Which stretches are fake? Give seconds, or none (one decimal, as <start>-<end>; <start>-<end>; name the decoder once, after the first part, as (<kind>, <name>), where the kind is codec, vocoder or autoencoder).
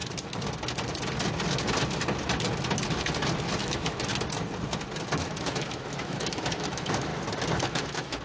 3.6-4.1 (autoencoder, DAC-VAE); 5.2-7.1; 7.6-8.2